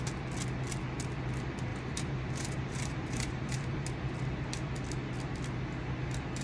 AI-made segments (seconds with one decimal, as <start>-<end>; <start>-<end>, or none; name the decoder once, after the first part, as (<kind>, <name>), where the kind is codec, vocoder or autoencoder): 1.7-3.8 (vocoder, BigVGAN v2)